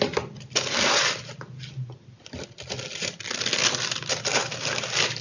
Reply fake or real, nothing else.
real